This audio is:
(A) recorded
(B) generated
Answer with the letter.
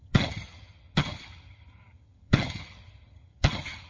B